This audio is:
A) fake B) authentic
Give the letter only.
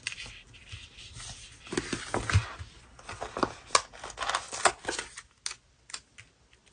B